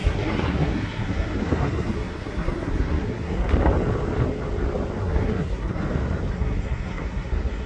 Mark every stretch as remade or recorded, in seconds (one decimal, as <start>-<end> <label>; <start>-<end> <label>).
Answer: 0.0-3.5 remade; 3.5-5.0 recorded; 5.0-5.8 remade; 5.8-6.3 recorded; 6.3-7.7 remade